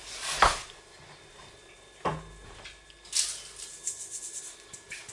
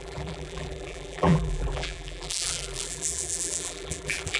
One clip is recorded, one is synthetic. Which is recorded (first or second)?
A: first